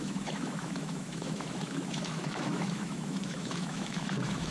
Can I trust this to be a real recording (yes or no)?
no